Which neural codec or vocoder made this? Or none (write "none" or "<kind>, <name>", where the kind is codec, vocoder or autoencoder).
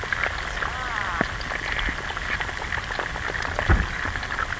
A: none